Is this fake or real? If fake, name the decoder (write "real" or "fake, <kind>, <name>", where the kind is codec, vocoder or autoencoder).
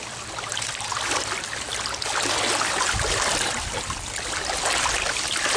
real